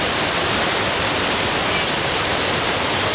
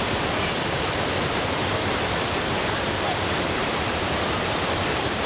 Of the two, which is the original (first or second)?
first